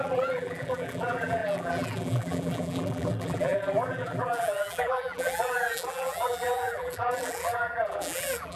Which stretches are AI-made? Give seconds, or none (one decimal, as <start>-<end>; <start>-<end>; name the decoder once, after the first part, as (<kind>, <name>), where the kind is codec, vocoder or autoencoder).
0.0-8.6 (vocoder, BigVGAN v2)